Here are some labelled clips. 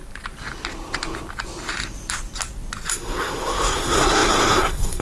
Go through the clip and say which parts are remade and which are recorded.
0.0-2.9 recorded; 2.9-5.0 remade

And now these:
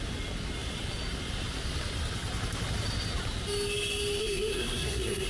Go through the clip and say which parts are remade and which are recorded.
0.0-4.2 recorded; 4.2-5.3 remade

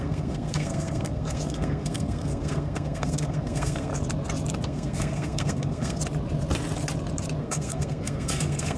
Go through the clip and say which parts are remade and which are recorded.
0.0-3.9 remade; 3.9-4.6 recorded; 4.6-6.0 remade; 6.0-7.4 recorded; 7.4-8.8 remade